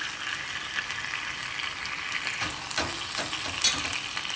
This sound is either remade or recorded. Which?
recorded